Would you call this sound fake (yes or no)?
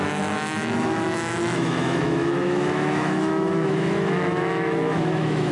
yes